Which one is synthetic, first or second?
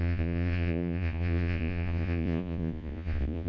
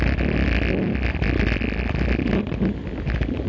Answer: first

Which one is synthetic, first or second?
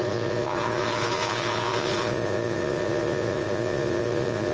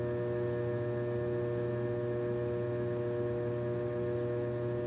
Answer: first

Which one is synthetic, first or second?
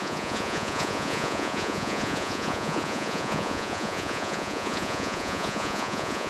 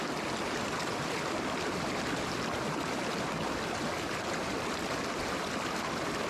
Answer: first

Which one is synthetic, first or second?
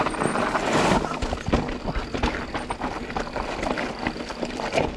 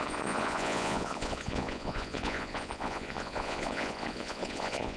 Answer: second